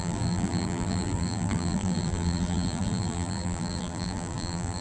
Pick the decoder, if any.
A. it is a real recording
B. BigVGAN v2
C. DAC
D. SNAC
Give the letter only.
B